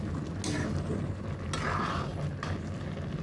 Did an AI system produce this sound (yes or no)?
no